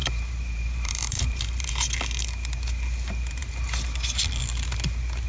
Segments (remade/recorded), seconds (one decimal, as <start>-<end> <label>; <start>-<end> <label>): 0.0-1.7 remade; 1.7-5.3 recorded